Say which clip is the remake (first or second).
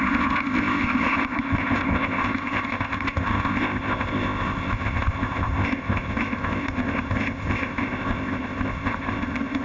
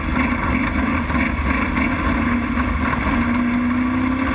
first